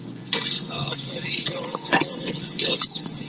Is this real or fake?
fake